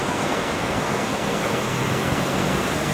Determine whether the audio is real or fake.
fake